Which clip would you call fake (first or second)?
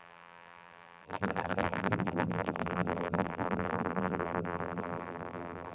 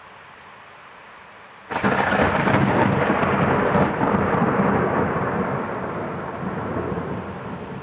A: first